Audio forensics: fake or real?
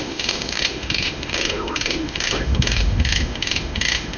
fake